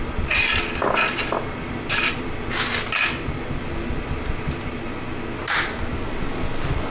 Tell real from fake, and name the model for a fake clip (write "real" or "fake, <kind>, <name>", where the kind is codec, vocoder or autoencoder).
real